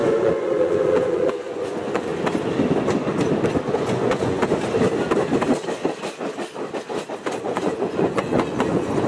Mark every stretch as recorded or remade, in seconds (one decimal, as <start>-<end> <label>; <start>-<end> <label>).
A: 0.0-2.1 remade; 2.1-3.7 recorded; 3.7-4.4 remade; 4.4-7.4 recorded; 7.4-9.1 remade